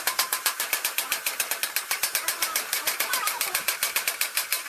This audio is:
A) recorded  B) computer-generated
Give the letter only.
B